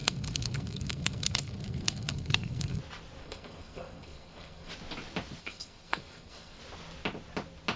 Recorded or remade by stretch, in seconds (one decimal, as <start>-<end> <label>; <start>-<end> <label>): 0.0-2.8 remade; 2.8-3.2 recorded; 3.2-4.7 remade; 4.7-5.4 recorded; 5.4-6.6 remade; 6.6-7.8 recorded

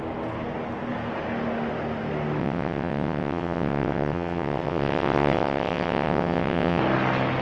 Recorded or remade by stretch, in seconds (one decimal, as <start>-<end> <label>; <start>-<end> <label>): 0.0-2.4 recorded; 2.4-6.8 remade; 6.8-7.4 recorded

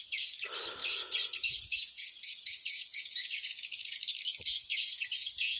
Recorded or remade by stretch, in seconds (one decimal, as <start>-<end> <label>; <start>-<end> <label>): 0.0-0.8 recorded; 0.8-4.0 remade; 4.0-4.7 recorded; 4.7-5.6 remade